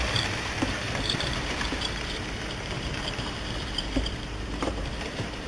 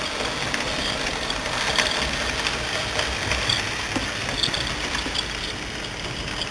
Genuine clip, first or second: second